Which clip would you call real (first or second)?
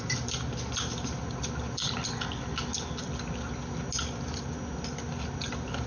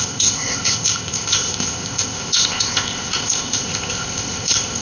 first